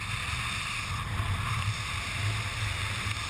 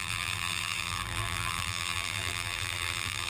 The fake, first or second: second